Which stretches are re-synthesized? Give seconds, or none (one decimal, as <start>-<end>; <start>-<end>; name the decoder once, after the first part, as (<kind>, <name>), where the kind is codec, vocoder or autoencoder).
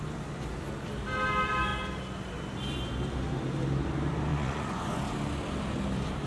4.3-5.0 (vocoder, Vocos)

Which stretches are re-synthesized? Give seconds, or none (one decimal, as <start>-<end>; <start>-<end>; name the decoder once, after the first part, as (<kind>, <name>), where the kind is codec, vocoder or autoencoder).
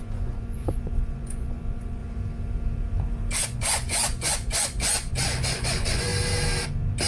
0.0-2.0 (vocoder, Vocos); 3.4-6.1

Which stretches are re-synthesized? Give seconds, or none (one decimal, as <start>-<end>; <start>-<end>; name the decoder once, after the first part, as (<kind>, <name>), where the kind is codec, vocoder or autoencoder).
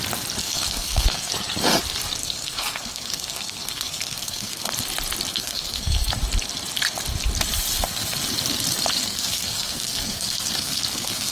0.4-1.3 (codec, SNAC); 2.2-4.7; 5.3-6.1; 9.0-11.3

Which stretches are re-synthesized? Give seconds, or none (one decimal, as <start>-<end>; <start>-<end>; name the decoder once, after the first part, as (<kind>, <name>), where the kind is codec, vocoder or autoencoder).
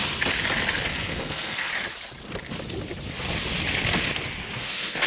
0.9-1.7 (codec, SNAC); 4.5-5.1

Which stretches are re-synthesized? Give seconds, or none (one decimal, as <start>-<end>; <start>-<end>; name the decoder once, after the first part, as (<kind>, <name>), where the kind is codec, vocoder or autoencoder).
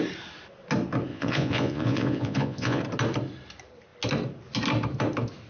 1.1-2.8 (vocoder, Vocos)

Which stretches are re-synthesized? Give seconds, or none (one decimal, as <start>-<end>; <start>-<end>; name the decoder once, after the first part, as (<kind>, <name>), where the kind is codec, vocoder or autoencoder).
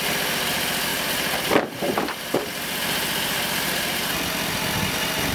0.9-4.1 (vocoder, BigVGAN v2)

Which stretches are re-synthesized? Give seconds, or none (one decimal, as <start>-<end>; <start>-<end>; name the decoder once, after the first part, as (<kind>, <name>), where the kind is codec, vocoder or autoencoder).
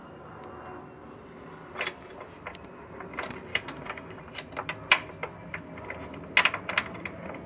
3.5-4.2 (codec, DAC)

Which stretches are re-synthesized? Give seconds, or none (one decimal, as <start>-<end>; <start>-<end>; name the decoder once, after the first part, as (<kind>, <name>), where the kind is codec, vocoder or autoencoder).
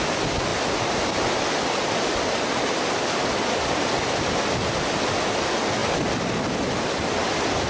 none